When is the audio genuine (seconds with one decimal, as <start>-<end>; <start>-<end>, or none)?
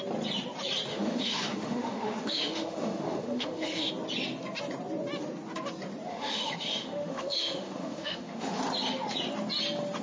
0.0-0.9; 3.9-6.1; 8.6-10.0